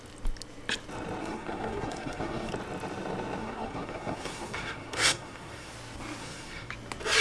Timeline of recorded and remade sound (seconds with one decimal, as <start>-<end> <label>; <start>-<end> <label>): 0.0-1.2 recorded; 1.2-2.5 remade; 2.5-3.4 recorded; 3.4-5.7 remade; 5.7-6.2 recorded; 6.2-6.7 remade; 6.7-7.2 recorded